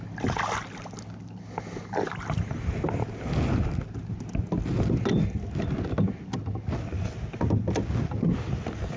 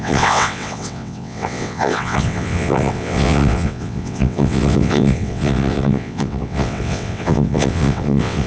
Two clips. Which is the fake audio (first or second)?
second